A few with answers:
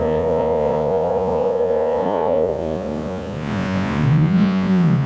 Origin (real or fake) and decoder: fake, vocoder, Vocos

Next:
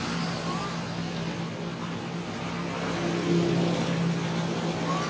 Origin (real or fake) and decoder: real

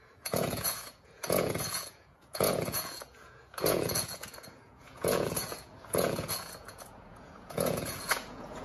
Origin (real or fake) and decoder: fake, vocoder, Vocos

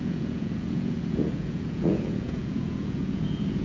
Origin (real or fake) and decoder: fake, vocoder, Vocos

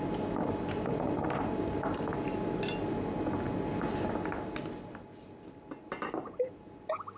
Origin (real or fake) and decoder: real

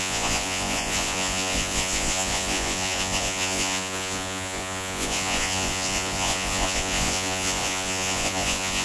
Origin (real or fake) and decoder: fake, vocoder, Vocos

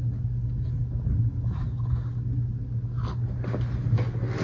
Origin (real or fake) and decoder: real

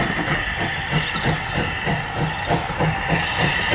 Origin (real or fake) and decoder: real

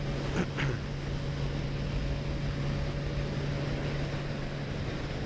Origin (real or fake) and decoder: real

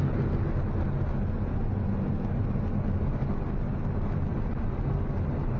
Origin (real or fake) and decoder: real